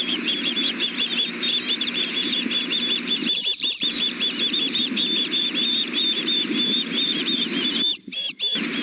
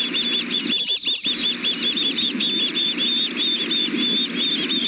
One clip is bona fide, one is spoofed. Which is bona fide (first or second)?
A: second